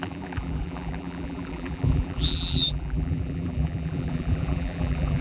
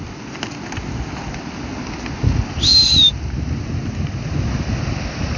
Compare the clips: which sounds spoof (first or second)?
first